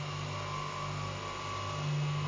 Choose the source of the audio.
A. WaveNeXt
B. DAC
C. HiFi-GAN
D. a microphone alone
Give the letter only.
D